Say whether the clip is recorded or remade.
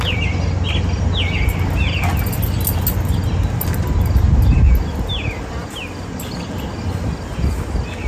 recorded